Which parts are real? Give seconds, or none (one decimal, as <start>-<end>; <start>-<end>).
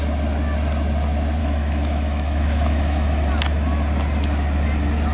0.0-1.4; 3.3-5.1